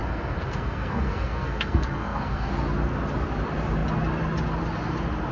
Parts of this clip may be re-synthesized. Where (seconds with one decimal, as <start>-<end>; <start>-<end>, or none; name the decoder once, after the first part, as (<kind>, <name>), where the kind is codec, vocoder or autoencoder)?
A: 0.0-2.5 (codec, SNAC)